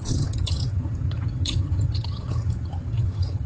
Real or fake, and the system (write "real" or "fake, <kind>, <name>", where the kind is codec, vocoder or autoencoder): fake, vocoder, HiFi-GAN